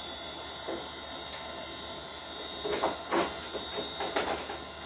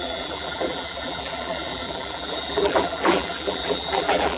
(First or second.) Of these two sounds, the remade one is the second